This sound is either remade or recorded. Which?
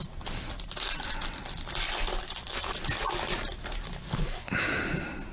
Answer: recorded